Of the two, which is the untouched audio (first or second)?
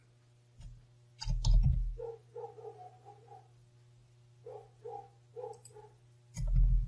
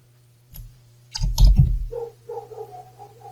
first